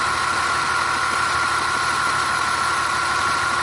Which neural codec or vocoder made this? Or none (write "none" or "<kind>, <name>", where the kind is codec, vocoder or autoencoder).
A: none